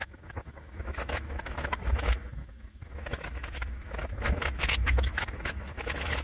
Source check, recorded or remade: remade